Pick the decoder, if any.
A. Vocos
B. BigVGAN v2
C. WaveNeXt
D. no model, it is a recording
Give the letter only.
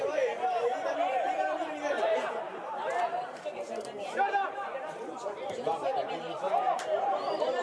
B